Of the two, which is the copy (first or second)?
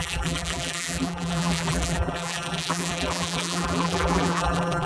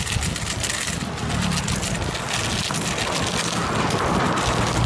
first